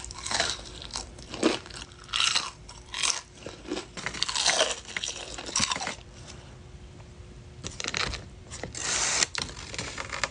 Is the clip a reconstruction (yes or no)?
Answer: yes